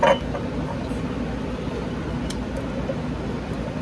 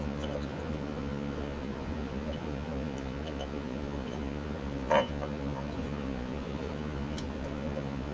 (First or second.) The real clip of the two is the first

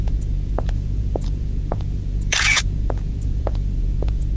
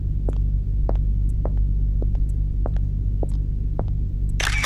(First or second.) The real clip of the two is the second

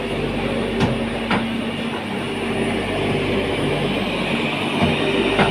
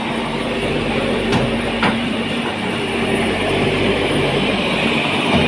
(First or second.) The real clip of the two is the first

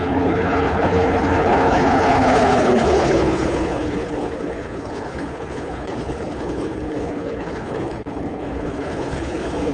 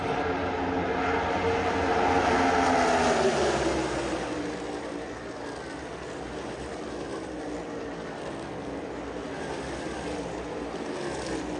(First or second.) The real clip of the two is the second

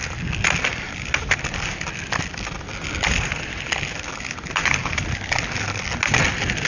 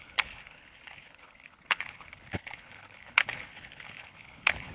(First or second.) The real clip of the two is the first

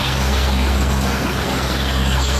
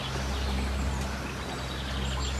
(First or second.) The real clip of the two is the second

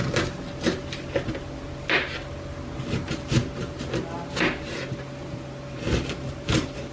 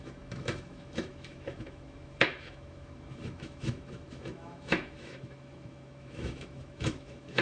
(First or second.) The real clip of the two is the first